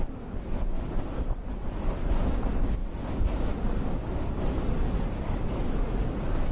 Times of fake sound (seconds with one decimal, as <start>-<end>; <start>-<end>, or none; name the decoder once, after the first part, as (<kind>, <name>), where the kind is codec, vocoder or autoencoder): none